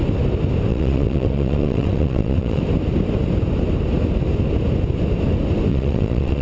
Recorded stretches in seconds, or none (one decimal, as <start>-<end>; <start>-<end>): 0.0-0.7; 2.6-5.7